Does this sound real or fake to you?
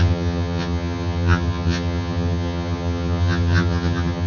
fake